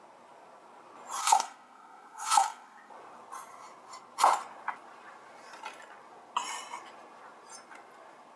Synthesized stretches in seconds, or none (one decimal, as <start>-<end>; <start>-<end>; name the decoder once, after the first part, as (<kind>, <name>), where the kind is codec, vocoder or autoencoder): 1.2-2.9 (codec, SNAC)